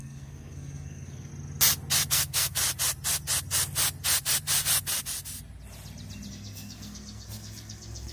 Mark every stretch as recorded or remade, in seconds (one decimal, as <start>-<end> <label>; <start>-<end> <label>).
0.0-1.3 remade; 1.3-2.1 recorded; 2.1-2.6 remade; 2.6-6.3 recorded; 6.3-8.1 remade